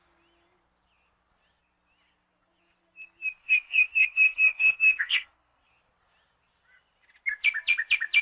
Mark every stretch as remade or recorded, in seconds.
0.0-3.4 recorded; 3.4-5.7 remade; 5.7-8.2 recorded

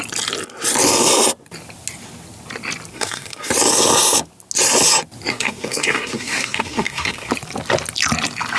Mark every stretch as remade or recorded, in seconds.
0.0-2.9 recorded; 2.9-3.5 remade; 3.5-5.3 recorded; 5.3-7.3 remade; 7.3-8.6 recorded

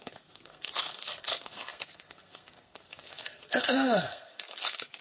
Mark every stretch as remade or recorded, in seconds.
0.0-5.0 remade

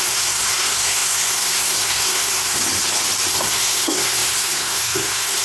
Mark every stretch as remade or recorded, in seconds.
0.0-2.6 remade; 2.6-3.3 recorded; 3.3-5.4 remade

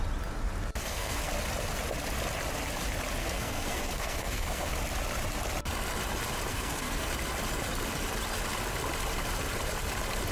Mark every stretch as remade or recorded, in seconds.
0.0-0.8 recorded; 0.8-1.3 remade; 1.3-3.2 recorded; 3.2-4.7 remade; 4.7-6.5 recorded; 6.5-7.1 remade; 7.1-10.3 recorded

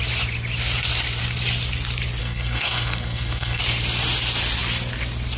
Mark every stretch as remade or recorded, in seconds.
0.0-2.2 recorded; 2.2-3.6 remade; 3.6-5.4 recorded

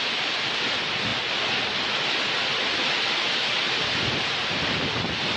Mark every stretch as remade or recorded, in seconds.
0.0-5.4 recorded

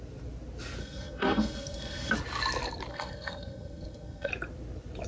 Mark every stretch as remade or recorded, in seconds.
0.0-0.8 recorded; 0.8-2.1 remade; 2.1-2.9 recorded; 2.9-4.3 remade; 4.3-5.1 recorded